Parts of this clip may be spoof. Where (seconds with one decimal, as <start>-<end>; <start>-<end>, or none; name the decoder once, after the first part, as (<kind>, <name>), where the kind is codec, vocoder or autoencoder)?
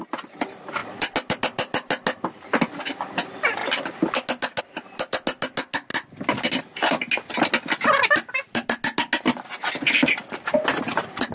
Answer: none